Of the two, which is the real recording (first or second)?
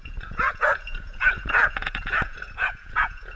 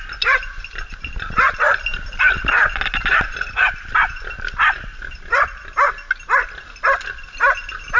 second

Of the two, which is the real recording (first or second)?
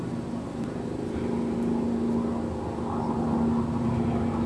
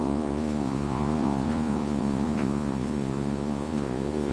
first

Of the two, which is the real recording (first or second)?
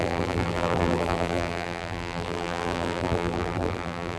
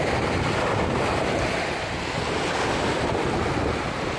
second